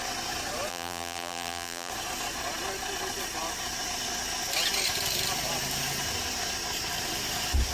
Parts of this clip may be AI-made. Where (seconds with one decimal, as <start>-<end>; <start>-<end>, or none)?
0.7-1.9